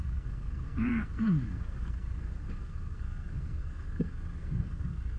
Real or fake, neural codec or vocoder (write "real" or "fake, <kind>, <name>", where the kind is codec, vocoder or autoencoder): fake, codec, SNAC